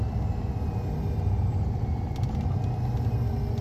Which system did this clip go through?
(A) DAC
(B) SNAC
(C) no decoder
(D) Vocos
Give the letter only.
C